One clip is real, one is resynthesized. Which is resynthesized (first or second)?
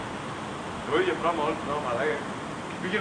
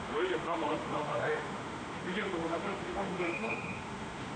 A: second